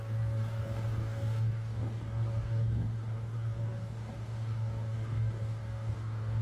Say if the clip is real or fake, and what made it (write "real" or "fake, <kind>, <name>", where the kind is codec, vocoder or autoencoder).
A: fake, codec, DAC